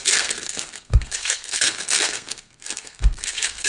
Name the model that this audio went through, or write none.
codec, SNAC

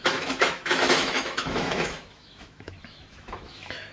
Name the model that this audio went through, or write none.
autoencoder, DAC-VAE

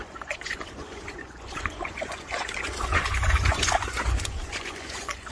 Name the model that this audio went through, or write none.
vocoder, Vocos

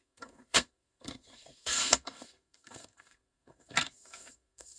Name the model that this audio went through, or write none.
codec, SNAC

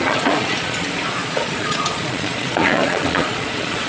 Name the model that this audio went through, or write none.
vocoder, Vocos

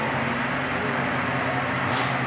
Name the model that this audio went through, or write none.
none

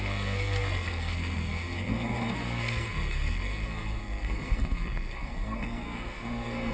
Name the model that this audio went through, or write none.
codec, SNAC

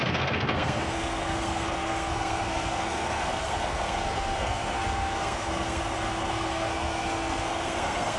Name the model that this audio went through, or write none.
codec, SNAC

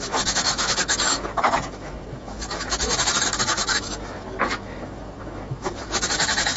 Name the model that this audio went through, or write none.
autoencoder, DAC-VAE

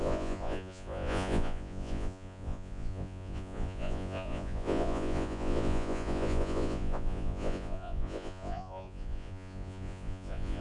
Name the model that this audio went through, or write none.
vocoder, Vocos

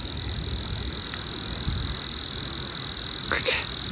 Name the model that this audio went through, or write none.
none